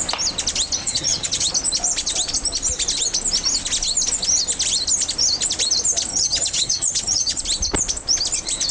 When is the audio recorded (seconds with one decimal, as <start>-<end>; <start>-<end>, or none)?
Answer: 0.0-0.8; 1.5-6.1; 7.4-8.7